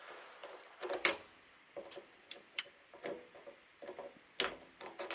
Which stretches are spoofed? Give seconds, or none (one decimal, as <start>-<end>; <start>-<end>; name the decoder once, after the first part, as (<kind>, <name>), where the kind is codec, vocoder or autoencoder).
0.4-2.6 (vocoder, BigVGAN v2)